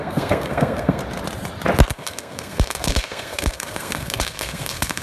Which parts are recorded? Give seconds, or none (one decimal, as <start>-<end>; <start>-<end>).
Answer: 1.0-1.9